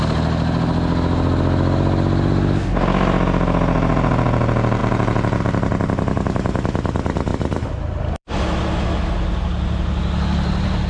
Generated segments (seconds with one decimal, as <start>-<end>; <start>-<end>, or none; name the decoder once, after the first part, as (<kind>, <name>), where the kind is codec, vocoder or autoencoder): 7.3-8.0 (vocoder, BigVGAN v2)